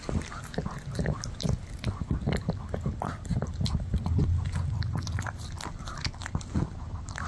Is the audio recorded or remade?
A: recorded